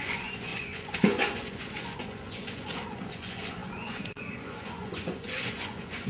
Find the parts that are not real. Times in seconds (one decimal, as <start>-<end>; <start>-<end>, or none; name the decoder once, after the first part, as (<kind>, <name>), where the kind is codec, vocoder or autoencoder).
0.0-6.1 (vocoder, Vocos)